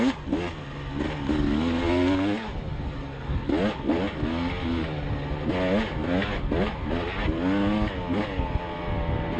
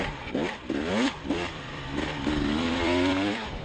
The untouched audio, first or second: first